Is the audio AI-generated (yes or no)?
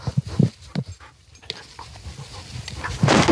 no